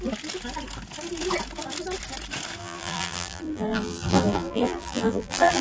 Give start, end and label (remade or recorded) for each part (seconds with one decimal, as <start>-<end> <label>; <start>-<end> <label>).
0.0-2.6 recorded; 2.6-5.6 remade